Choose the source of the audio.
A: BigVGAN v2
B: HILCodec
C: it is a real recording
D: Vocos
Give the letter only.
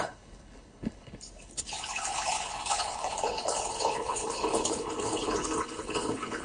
B